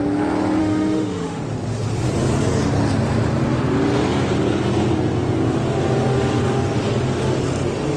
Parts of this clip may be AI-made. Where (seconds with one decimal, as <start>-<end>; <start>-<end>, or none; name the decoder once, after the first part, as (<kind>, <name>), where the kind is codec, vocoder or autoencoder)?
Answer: 0.6-1.4 (autoencoder, DAC-VAE)

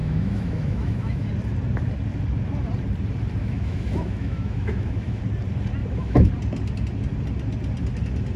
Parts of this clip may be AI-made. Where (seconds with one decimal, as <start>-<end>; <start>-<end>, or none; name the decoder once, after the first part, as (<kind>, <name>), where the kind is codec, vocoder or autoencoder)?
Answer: 0.0-1.3 (autoencoder, DAC-VAE); 3.4-5.2; 5.8-6.3

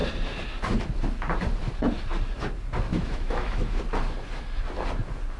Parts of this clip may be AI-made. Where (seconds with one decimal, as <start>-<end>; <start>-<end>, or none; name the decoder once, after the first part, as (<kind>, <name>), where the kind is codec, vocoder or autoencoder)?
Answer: 2.9-3.8 (autoencoder, DAC-VAE)

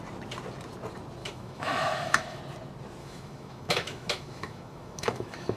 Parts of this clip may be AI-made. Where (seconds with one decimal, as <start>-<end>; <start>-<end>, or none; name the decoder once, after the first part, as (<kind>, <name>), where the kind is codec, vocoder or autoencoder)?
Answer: 1.2-2.4 (autoencoder, DAC-VAE); 3.0-5.6

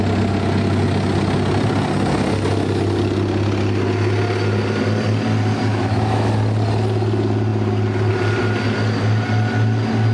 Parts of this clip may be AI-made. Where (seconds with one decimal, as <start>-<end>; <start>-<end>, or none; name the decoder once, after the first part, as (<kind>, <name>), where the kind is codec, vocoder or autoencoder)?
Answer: 5.7-6.3 (autoencoder, DAC-VAE)

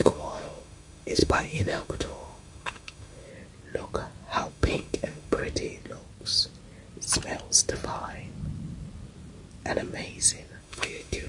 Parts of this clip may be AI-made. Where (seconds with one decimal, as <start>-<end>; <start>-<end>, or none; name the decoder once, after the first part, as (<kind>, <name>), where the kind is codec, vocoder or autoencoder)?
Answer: 0.0-3.3 (autoencoder, DAC-VAE); 4.5-5.4; 10.6-11.3

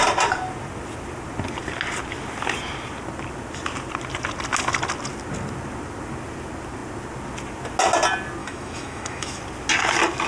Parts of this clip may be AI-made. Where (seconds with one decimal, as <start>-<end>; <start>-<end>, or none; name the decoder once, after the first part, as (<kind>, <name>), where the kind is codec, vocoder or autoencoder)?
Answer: 8.4-9.4 (autoencoder, DAC-VAE)